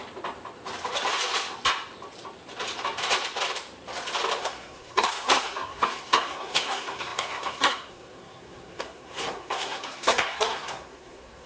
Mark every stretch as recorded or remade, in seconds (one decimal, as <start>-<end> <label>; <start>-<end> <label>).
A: 0.0-4.4 recorded; 4.4-11.5 remade